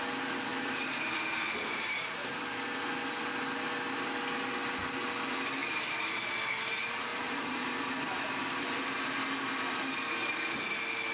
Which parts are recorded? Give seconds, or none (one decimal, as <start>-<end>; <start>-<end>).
0.0-0.5; 2.4-7.1; 9.3-11.1